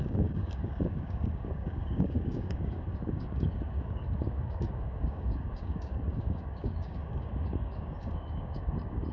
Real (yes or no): no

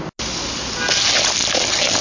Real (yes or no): yes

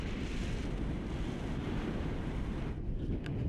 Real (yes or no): yes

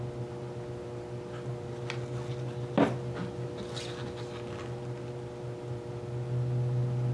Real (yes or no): yes